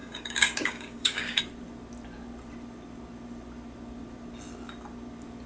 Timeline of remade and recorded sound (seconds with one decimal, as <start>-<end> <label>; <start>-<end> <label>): 0.0-1.4 remade; 1.4-5.5 recorded